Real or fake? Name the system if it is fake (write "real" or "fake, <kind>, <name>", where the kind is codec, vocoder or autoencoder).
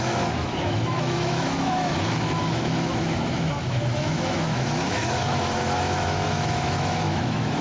fake, autoencoder, DAC-VAE